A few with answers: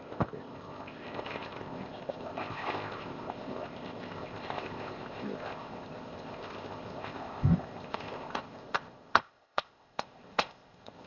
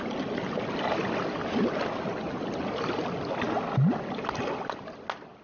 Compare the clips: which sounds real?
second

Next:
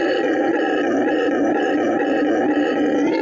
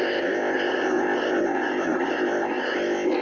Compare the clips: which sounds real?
first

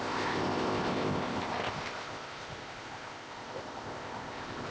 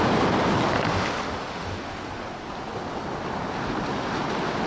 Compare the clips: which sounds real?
second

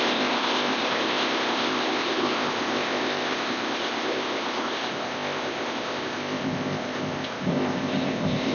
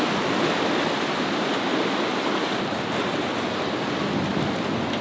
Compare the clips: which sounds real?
second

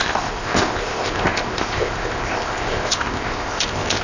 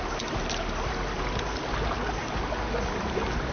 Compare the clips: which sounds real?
second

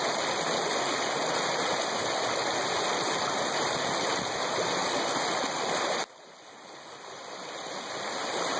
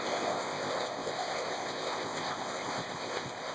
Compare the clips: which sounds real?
first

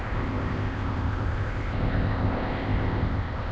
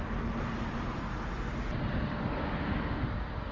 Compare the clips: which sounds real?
second